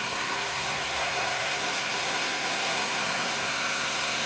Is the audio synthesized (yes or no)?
yes